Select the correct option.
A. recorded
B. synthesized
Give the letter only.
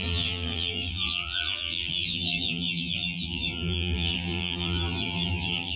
B